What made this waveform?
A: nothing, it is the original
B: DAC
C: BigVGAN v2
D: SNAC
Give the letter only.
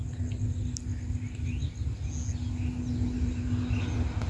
A